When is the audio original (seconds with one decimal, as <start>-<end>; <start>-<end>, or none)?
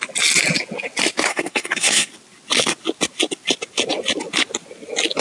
0.0-1.3; 2.1-5.2